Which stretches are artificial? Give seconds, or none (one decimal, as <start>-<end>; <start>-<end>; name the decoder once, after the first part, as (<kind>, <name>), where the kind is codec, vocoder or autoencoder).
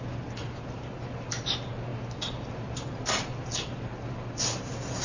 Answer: none